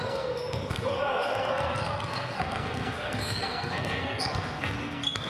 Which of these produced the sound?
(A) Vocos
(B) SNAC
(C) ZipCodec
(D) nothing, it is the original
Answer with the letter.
B